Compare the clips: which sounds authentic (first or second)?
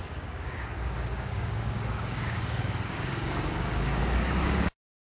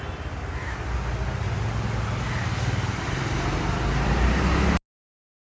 second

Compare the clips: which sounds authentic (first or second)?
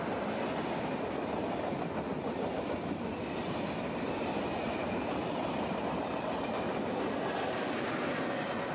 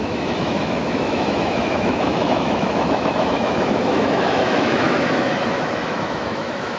first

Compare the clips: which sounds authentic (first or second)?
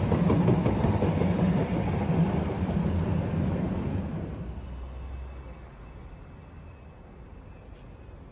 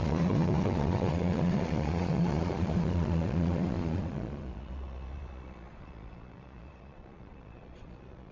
first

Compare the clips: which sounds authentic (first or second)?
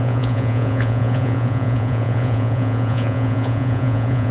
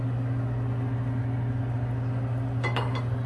second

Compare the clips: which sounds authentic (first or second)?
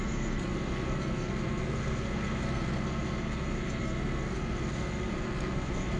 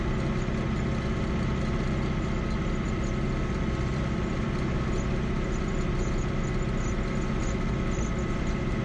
second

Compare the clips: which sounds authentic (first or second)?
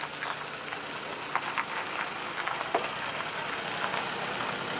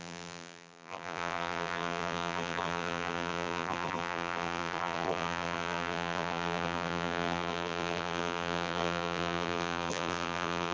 first